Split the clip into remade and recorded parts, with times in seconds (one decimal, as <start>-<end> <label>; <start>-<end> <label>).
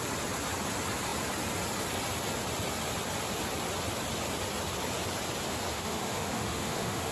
0.0-5.7 recorded; 5.7-7.1 remade